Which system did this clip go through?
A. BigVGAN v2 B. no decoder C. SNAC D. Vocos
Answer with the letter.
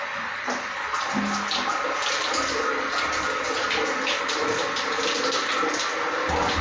B